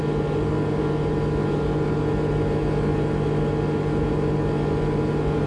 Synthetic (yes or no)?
no